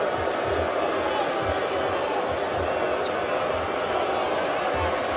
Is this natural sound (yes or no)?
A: yes